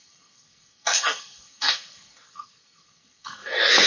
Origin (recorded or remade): remade